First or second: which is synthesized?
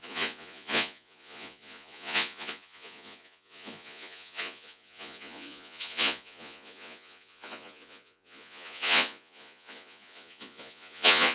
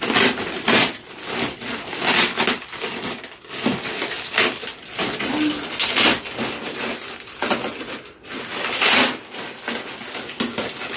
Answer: first